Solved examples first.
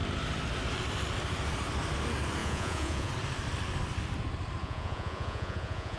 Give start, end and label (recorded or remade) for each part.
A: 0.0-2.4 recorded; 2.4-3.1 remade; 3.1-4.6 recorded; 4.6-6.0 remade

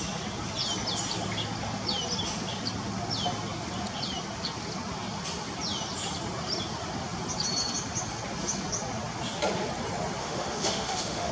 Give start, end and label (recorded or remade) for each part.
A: 0.0-10.2 recorded; 10.2-11.3 remade

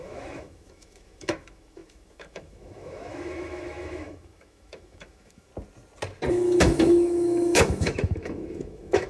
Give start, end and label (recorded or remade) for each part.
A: 0.0-5.5 remade; 5.5-6.3 recorded; 6.3-9.1 remade

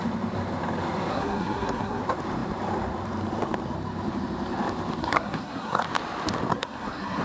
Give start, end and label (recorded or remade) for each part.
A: 0.0-1.1 recorded; 1.1-2.0 remade; 2.0-5.0 recorded; 5.0-5.8 remade; 5.8-6.5 recorded; 6.5-7.2 remade

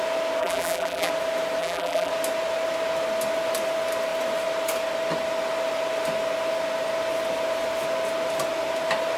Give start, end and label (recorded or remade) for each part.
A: 0.0-0.4 recorded; 0.4-1.1 remade; 1.1-1.6 recorded; 1.6-2.1 remade; 2.1-9.2 recorded

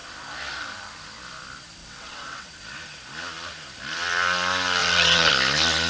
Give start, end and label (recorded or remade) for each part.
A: 0.0-1.8 recorded; 1.8-2.5 remade; 2.5-4.8 recorded; 4.8-5.3 remade; 5.3-5.9 recorded